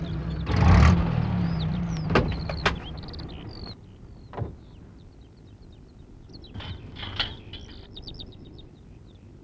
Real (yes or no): yes